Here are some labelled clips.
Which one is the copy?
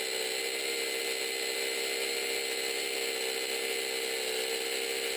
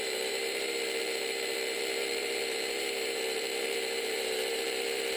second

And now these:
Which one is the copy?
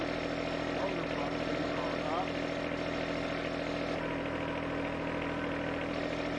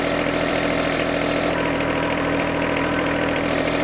second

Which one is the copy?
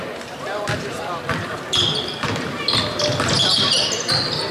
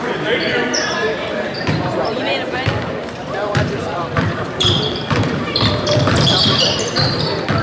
second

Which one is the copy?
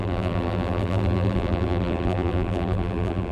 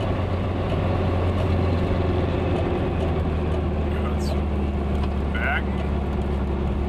first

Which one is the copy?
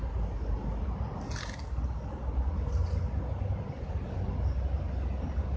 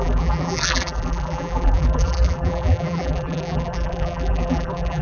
second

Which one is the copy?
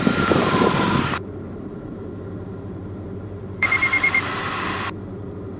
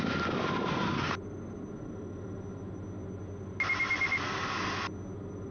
first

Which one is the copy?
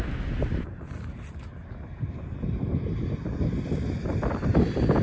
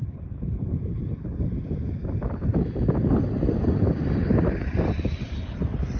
second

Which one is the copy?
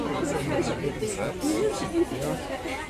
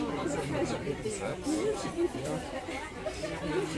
second